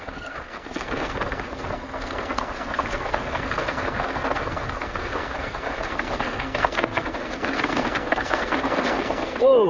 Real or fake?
fake